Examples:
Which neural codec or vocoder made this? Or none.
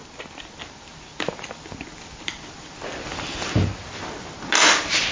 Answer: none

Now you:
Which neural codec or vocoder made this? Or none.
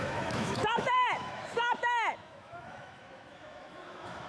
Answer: autoencoder, DAC-VAE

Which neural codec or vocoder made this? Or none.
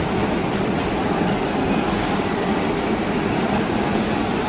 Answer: vocoder, BigVGAN v2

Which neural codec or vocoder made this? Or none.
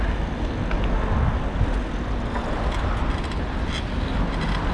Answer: none